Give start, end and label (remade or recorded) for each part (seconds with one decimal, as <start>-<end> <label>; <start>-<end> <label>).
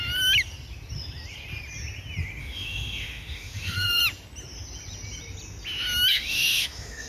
0.0-2.4 recorded; 2.4-4.0 remade; 4.0-6.1 recorded; 6.1-7.1 remade